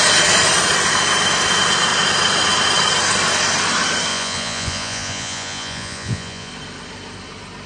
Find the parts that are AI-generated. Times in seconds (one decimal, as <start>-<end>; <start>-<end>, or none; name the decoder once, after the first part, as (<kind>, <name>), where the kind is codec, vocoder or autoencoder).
4.1-6.5 (vocoder, Vocos)